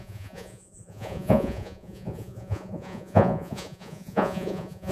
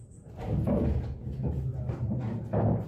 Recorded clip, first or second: second